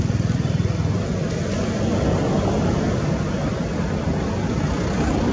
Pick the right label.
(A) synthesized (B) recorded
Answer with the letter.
B